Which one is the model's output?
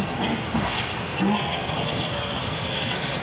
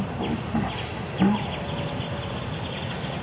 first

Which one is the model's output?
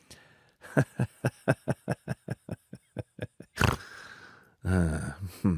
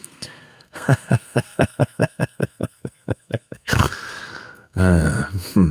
second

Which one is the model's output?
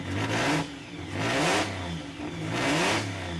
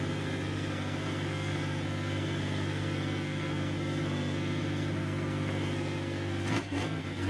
second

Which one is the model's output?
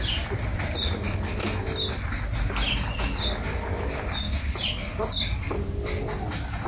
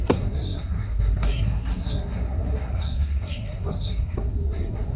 second